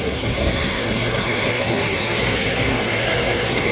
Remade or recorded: remade